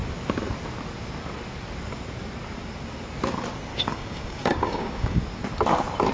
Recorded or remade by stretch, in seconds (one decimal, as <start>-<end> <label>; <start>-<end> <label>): 0.0-3.7 recorded; 3.7-5.2 remade; 5.2-6.1 recorded